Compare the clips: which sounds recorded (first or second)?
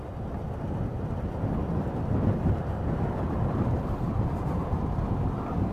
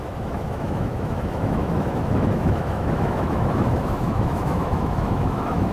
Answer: first